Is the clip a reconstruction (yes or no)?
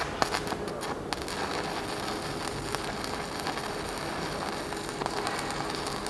no